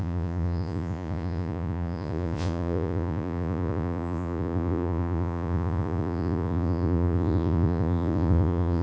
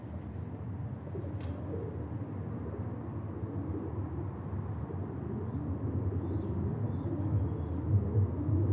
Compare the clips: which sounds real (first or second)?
second